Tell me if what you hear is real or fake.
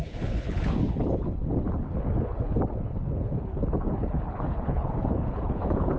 fake